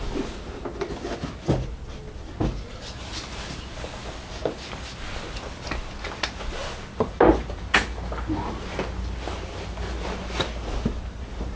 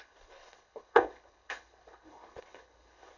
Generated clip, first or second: second